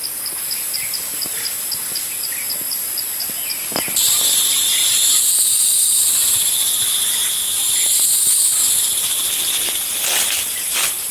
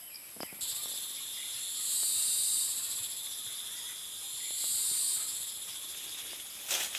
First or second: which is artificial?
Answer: first